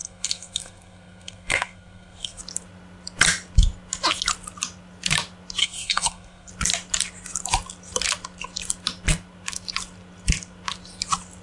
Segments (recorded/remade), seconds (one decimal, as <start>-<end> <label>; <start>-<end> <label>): 0.0-2.4 remade; 2.4-5.6 recorded; 5.6-6.5 remade; 6.5-11.4 recorded